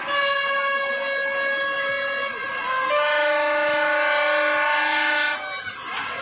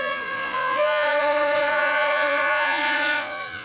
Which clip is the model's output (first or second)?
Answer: second